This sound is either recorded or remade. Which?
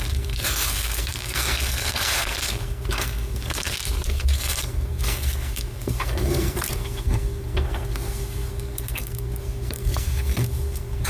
remade